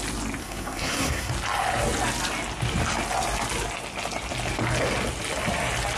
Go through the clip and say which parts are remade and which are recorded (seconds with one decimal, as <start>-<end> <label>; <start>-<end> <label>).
0.0-0.4 recorded; 0.4-1.3 remade; 1.3-6.0 recorded

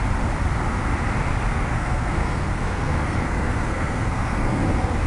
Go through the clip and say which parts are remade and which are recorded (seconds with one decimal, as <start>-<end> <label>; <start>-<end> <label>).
0.0-1.5 recorded; 1.5-4.6 remade; 4.6-5.1 recorded

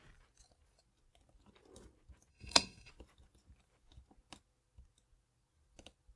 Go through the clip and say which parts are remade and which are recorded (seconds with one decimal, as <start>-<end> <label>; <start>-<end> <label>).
0.0-2.3 recorded; 2.3-2.9 remade; 2.9-6.2 recorded

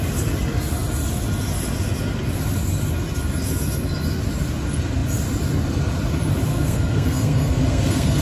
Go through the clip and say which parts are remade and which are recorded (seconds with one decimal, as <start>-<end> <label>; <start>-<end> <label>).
0.0-6.5 recorded; 6.5-8.2 remade

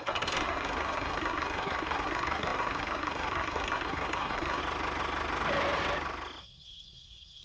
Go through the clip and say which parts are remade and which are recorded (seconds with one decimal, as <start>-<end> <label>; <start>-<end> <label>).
0.0-4.6 remade; 4.6-6.4 recorded; 6.4-7.4 remade

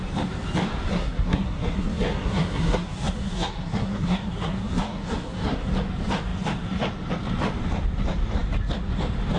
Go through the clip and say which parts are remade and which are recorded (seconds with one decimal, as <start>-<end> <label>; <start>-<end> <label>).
0.0-0.9 recorded; 0.9-5.7 remade; 5.7-9.4 recorded

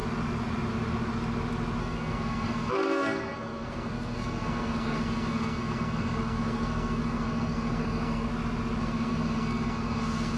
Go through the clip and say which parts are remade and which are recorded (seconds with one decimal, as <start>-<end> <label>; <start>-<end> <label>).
0.0-1.8 recorded; 1.8-8.3 remade; 8.3-8.8 recorded; 8.8-10.4 remade

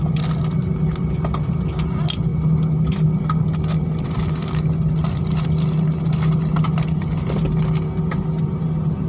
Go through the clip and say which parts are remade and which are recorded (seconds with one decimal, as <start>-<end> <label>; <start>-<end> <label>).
0.0-9.1 recorded